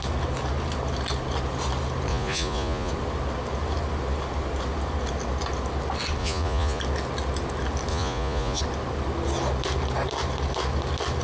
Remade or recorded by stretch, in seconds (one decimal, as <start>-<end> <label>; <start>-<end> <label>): 0.0-2.1 recorded; 2.1-2.9 remade; 2.9-6.2 recorded; 6.2-6.8 remade; 6.8-7.9 recorded; 7.9-8.6 remade; 8.6-11.2 recorded